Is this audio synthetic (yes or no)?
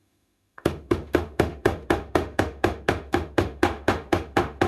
yes